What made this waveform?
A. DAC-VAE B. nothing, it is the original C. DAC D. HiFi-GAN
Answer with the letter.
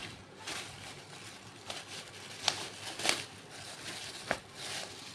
B